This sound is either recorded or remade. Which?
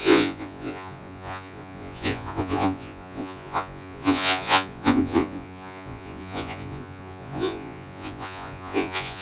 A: remade